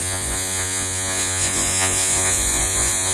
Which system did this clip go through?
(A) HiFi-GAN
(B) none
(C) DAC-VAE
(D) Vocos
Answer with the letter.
D